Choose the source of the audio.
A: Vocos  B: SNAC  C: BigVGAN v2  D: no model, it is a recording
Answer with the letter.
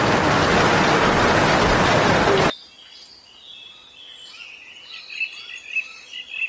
D